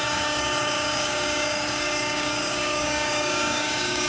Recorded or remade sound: remade